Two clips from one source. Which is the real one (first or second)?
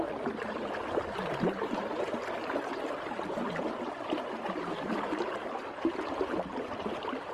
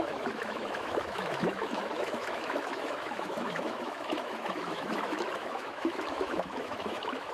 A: first